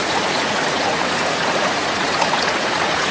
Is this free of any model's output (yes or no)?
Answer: no